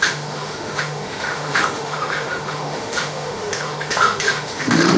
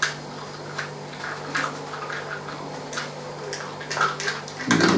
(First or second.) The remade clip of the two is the first